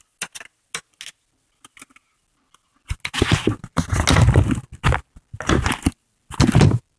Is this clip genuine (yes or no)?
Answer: yes